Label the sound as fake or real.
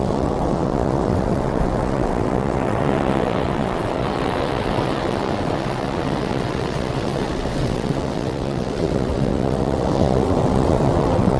fake